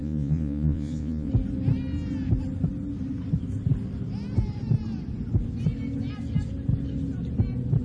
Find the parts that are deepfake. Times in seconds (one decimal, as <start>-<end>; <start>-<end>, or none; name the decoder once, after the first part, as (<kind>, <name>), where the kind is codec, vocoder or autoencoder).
0.0-1.3 (vocoder, Vocos)